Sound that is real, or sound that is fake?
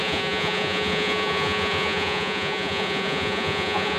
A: fake